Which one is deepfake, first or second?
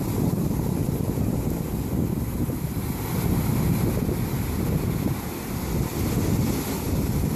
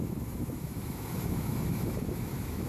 second